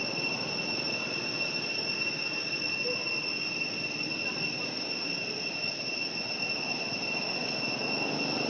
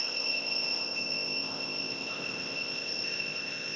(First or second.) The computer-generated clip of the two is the second